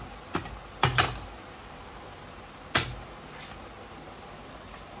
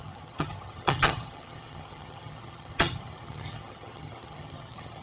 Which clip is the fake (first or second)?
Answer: second